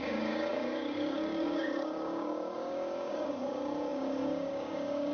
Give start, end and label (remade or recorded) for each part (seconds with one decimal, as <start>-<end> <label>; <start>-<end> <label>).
0.0-5.1 remade